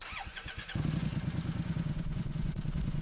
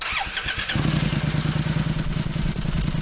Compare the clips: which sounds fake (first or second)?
first